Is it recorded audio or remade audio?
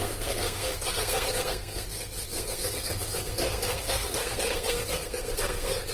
remade